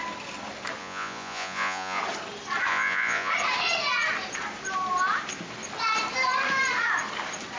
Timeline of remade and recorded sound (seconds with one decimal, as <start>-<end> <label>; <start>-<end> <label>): 0.0-0.8 recorded; 0.8-2.0 remade; 2.0-2.7 recorded; 2.7-3.3 remade; 3.3-7.6 recorded